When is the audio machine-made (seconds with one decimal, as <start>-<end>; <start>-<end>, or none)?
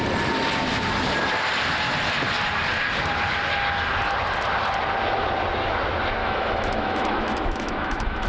6.2-8.3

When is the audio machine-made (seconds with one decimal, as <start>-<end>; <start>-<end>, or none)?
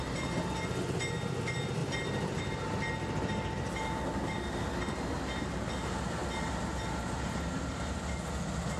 none